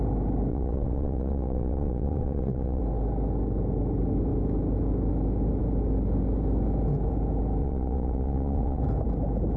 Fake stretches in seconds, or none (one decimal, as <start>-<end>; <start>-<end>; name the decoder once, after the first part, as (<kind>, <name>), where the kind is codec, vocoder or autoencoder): 0.5-2.8 (vocoder, WaveNeXt); 7.6-8.8

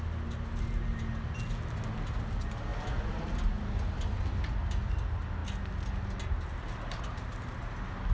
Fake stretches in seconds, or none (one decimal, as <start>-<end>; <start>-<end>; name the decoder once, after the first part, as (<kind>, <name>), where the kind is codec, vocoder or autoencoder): none

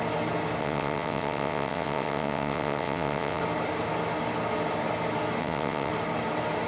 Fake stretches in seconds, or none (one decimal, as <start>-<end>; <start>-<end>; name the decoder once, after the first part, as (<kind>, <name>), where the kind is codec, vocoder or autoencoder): 0.6-3.4 (vocoder, WaveNeXt); 5.4-5.9

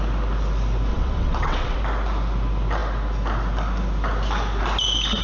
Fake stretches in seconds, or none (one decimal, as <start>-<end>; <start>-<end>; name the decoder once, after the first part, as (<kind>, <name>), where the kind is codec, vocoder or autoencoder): 0.9-1.8 (vocoder, WaveNeXt)

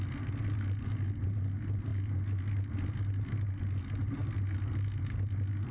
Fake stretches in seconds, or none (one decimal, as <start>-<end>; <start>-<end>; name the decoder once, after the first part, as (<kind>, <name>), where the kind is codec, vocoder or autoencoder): none

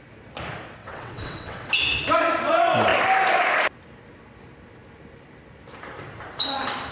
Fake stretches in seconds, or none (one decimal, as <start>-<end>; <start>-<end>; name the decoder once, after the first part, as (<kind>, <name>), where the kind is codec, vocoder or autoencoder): 0.8-1.7 (vocoder, WaveNeXt)